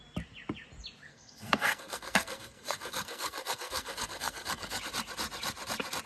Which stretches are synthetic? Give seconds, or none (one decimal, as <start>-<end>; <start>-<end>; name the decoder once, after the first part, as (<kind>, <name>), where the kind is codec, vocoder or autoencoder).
1.1-4.8 (codec, SNAC)